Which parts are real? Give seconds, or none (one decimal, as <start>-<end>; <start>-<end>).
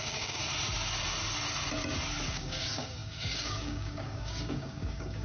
0.4-2.3